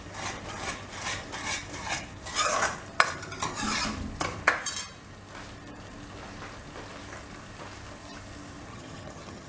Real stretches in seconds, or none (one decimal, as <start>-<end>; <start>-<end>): 0.0-8.7